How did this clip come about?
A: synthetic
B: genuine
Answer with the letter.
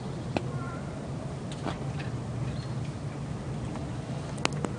B